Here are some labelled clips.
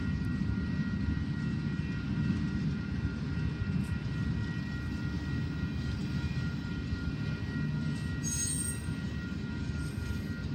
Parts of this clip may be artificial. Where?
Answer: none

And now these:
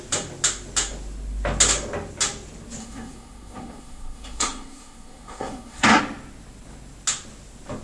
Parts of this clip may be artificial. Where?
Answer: 2.8-6.0 (codec, SNAC)

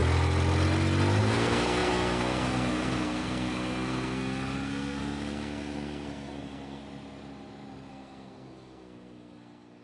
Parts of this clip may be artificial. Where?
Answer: 1.2-6.8 (codec, SNAC); 7.9-9.8

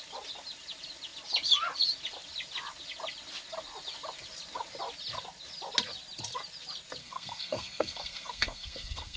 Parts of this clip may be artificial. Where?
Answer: 7.0-9.2 (codec, SNAC)

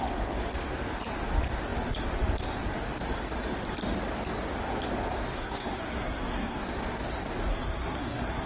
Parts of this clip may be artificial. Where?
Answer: 5.4-6.6 (codec, SNAC); 7.5-8.5

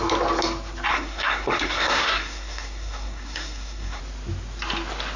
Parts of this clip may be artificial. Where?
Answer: 0.9-4.0 (codec, SNAC)

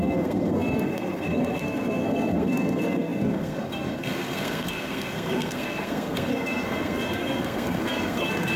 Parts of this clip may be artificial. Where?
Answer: 0.0-8.6 (codec, SNAC)